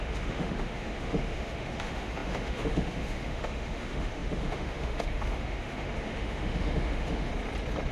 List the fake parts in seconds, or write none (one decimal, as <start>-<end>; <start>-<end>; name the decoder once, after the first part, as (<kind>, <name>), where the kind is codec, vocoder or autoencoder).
0.0-7.3 (autoencoder, DAC-VAE)